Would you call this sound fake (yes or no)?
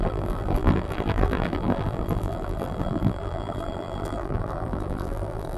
yes